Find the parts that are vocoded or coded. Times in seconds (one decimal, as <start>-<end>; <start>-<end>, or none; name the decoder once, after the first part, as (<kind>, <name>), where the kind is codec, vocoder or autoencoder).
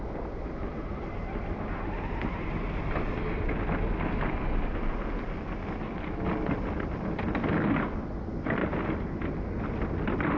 none